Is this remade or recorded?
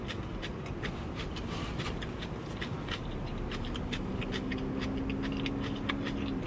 recorded